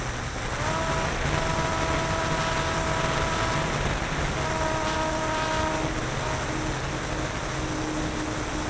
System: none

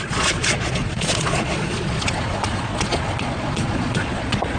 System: vocoder, Vocos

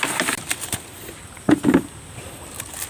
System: none